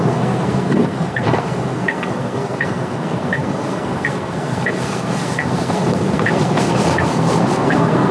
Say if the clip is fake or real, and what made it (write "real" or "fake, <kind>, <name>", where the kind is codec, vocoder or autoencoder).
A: fake, codec, SNAC